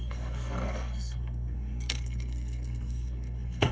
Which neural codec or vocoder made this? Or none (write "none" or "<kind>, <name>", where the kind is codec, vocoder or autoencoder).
codec, SNAC